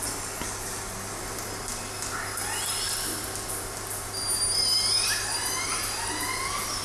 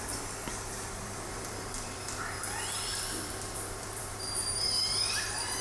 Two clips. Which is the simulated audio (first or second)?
second